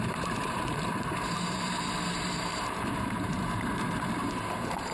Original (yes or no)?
no